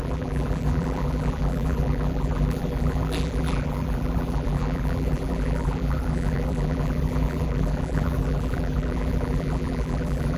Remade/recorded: remade